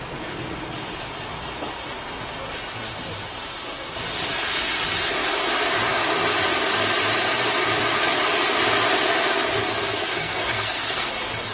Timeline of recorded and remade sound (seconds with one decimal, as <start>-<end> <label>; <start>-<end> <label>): 0.0-10.0 recorded; 10.0-11.1 remade; 11.1-11.5 recorded